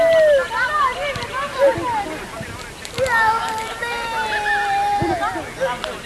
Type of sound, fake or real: real